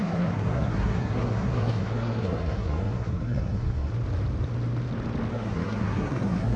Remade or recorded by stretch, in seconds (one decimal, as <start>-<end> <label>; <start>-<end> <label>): 0.0-3.9 remade; 3.9-5.3 recorded; 5.3-6.6 remade